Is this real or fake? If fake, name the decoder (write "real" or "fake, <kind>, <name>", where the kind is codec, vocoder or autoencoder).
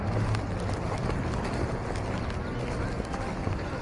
real